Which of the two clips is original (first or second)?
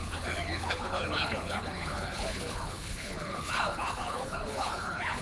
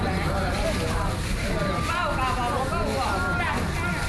second